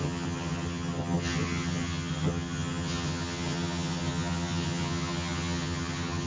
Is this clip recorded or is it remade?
remade